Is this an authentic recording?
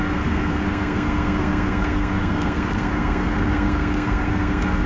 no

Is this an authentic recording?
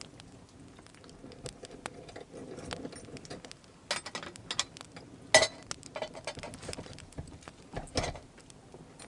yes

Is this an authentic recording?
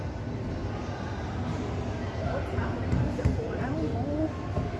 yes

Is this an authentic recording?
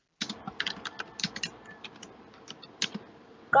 yes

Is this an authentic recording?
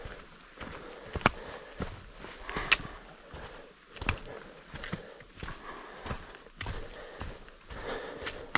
yes